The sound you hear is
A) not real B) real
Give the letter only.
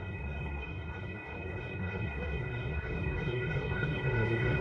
A